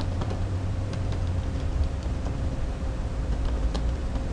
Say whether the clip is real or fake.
fake